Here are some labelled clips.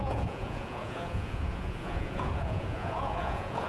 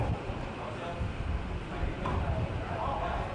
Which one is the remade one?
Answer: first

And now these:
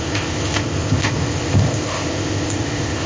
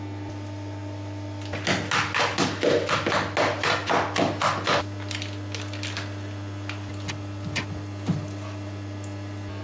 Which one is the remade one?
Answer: first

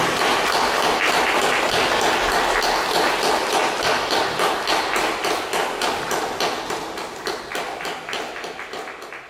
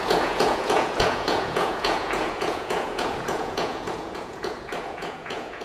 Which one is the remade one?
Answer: second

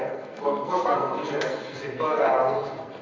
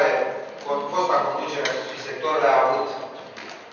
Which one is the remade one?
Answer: first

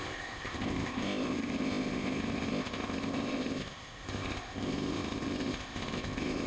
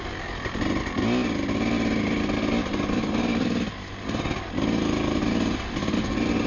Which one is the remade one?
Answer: first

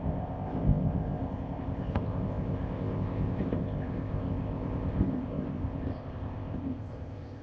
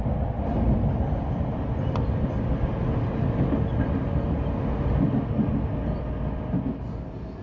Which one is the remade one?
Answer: first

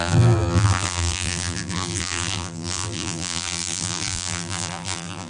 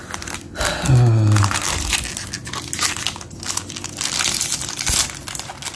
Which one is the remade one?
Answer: first